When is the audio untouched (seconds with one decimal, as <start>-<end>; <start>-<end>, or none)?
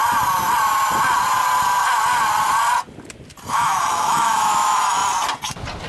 0.0-3.5; 5.0-5.9